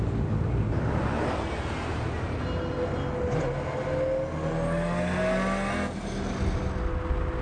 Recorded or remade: recorded